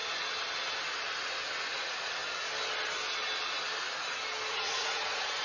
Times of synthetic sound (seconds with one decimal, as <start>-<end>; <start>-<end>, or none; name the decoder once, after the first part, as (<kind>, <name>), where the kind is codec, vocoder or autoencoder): 1.8-2.2 (vocoder, Vocos); 4.5-5.4